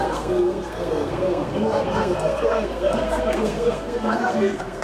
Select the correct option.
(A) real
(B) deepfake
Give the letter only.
B